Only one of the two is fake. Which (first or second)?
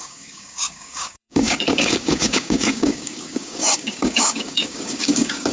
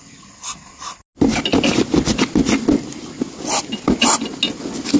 first